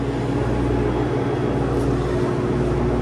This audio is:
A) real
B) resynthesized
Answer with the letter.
A